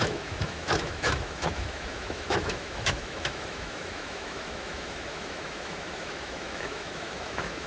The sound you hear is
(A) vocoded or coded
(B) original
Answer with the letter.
A